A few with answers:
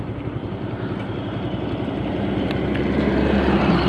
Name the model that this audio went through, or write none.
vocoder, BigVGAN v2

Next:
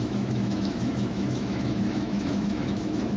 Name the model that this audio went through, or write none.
autoencoder, DAC-VAE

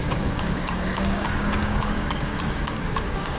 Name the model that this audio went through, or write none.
codec, DAC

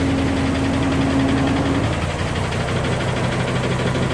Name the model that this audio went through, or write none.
none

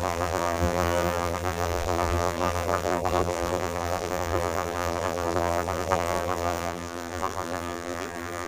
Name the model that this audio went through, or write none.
vocoder, BigVGAN v2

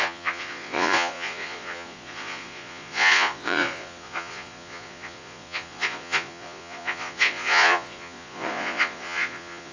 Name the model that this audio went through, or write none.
vocoder, Vocos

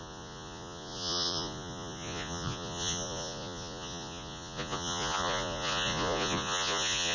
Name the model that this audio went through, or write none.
vocoder, Vocos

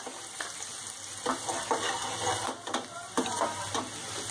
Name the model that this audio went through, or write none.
none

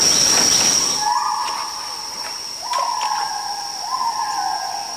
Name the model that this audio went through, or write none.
none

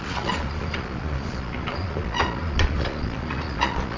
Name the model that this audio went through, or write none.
vocoder, Vocos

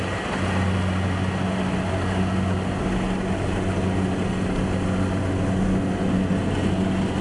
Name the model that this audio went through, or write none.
none